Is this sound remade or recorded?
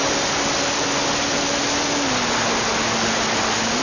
recorded